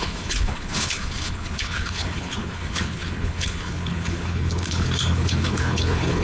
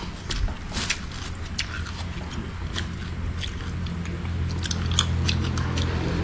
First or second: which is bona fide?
second